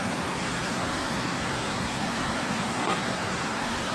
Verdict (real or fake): fake